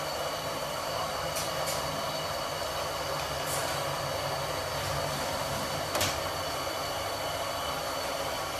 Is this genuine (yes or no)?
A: yes